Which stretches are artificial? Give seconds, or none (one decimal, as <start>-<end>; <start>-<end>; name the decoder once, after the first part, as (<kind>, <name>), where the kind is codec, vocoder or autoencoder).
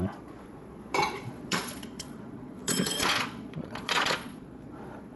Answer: 0.0-5.2 (vocoder, Vocos)